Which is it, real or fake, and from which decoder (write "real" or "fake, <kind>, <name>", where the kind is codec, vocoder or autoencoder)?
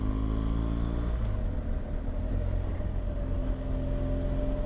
real